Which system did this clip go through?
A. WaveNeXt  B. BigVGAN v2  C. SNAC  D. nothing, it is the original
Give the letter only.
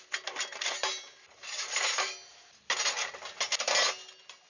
D